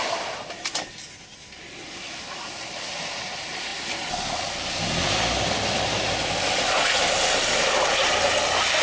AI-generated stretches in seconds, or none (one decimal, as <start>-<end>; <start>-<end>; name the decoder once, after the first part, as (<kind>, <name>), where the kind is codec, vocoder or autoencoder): none